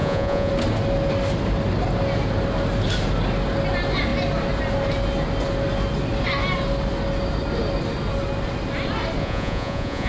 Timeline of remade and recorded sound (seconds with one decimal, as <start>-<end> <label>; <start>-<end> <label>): 0.0-0.5 remade; 0.5-9.2 recorded; 9.2-10.1 remade